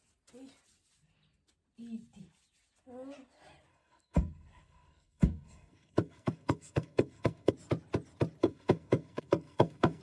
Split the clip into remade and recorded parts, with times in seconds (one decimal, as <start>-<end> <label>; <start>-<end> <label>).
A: 0.0-3.7 recorded; 3.7-7.5 remade; 7.5-8.4 recorded; 8.4-10.0 remade